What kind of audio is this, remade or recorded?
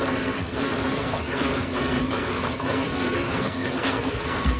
remade